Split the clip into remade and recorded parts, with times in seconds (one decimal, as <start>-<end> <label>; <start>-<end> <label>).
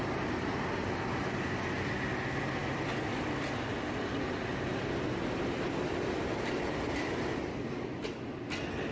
0.0-8.9 recorded